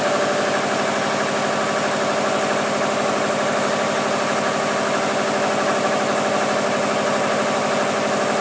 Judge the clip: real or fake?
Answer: real